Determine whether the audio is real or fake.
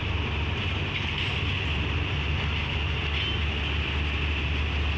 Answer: real